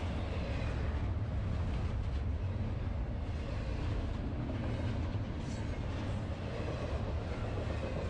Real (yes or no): yes